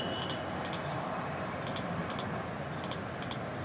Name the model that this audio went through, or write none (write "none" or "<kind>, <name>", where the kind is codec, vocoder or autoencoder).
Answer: none